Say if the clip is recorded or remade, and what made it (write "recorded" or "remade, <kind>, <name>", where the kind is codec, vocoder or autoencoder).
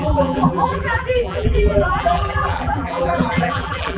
remade, vocoder, BigVGAN v2